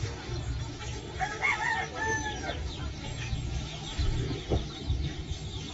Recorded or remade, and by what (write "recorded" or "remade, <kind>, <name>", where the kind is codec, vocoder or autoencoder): recorded